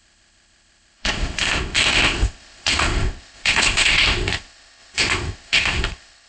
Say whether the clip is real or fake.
fake